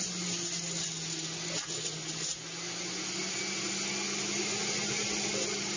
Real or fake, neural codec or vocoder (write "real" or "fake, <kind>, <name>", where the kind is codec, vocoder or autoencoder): real